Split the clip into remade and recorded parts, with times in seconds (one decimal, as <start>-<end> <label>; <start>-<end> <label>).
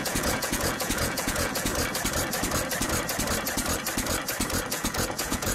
0.0-1.7 remade; 1.7-4.7 recorded; 4.7-5.5 remade